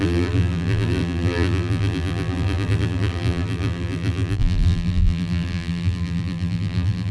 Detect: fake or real fake